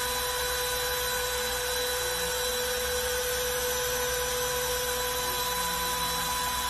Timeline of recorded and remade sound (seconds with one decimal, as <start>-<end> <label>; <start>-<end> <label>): 0.0-6.7 recorded